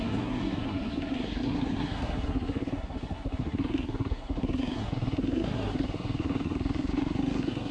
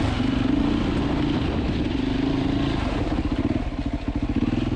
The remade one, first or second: first